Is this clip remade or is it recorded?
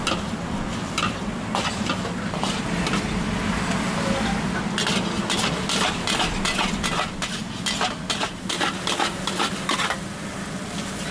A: recorded